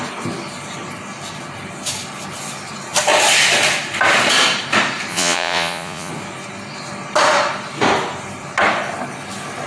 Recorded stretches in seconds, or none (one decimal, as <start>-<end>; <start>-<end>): 0.0-5.1; 6.1-9.7